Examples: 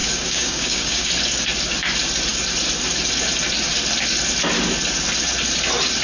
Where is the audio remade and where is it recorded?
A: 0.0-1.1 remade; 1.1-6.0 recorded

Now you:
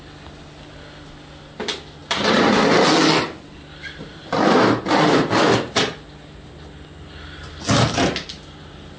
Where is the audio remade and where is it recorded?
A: 0.0-9.0 recorded